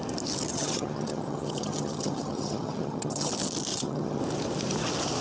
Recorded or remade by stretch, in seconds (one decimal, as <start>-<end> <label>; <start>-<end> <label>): 0.0-0.5 recorded; 0.5-3.3 remade; 3.3-3.7 recorded; 3.7-4.2 remade; 4.2-5.2 recorded